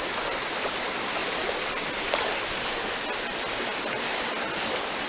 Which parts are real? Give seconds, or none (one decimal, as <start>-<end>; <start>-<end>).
0.0-5.1